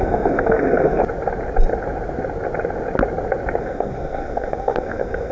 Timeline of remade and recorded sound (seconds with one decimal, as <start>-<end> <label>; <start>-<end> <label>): 0.0-1.0 remade; 1.0-3.6 recorded; 3.6-5.3 remade